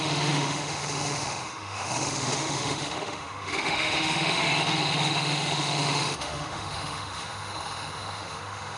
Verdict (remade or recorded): remade